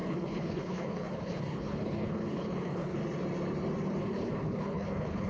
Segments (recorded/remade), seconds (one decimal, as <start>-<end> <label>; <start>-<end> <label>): 0.0-3.0 remade; 3.0-4.0 recorded; 4.0-5.3 remade